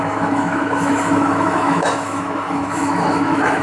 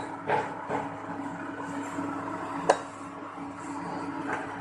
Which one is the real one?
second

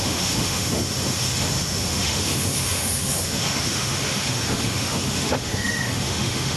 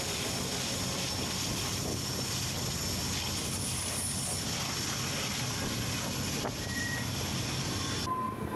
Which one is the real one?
second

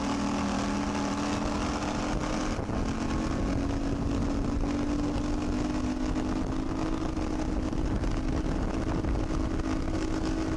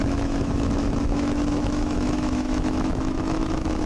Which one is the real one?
first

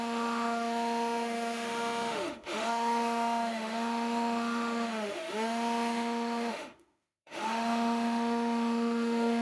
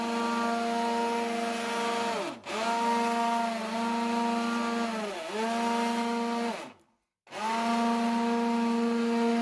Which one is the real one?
second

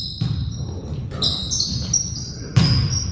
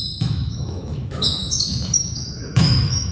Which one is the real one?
first